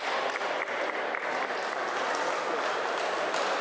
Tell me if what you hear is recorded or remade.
recorded